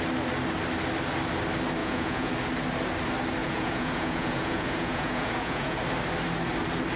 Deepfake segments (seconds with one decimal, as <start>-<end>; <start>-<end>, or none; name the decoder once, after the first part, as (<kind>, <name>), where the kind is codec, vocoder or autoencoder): 1.8-2.3 (vocoder, Vocos); 3.4-5.8